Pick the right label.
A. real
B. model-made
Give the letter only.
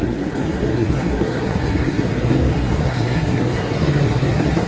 B